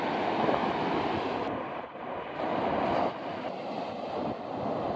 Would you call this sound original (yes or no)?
yes